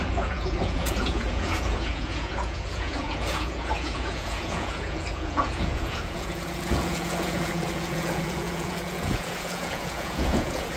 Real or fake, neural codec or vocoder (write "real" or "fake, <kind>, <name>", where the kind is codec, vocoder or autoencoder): fake, vocoder, Vocos